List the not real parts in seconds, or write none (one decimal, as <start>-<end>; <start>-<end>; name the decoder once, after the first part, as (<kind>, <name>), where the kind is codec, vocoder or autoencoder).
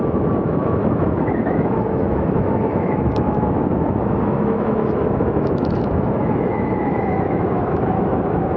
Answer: 0.0-8.6 (autoencoder, DAC-VAE)